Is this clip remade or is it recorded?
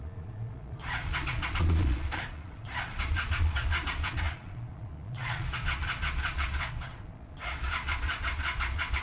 remade